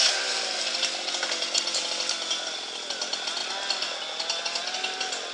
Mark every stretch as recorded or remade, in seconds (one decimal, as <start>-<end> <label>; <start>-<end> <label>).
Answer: 0.0-5.3 recorded